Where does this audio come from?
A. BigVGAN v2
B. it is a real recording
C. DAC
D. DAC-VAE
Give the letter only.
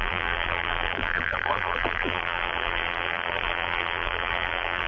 A